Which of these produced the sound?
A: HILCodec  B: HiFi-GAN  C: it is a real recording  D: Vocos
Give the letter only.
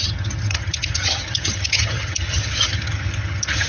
B